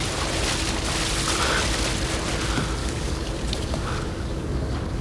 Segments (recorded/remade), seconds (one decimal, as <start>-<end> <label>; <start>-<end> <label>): 0.0-2.8 recorded; 2.8-5.0 remade